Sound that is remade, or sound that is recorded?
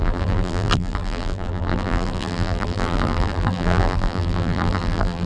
remade